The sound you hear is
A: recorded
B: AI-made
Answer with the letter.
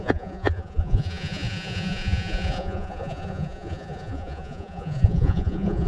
B